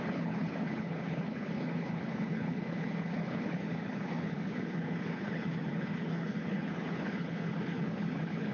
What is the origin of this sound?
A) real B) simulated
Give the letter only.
B